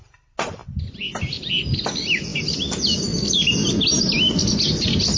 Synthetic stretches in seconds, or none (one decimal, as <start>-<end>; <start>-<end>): none